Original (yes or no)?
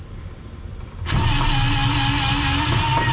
yes